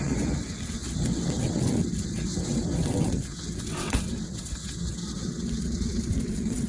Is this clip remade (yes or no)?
yes